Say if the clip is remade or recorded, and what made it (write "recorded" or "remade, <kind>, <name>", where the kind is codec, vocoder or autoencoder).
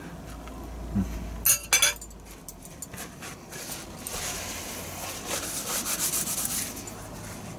recorded